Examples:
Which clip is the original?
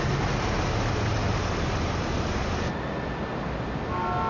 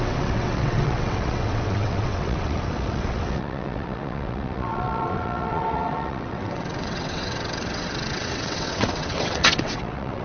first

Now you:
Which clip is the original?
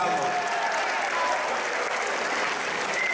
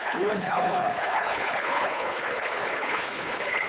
first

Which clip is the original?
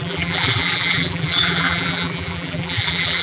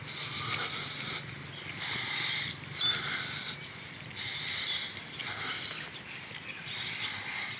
second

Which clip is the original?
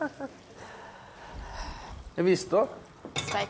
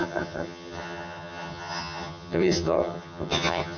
first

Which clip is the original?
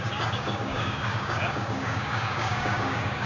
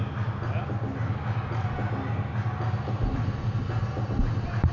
second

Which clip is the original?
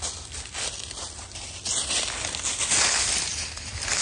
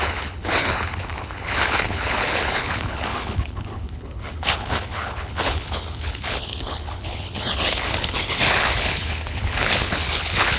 first